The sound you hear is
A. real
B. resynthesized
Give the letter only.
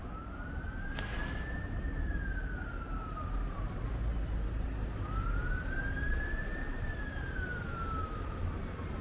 A